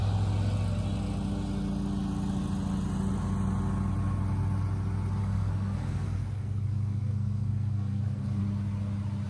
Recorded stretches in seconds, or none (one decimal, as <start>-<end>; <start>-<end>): 0.0-5.2; 8.4-9.3